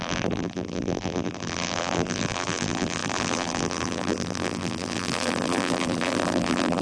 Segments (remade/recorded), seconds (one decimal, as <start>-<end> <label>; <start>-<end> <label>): 0.0-6.8 remade